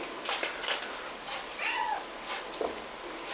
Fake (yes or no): no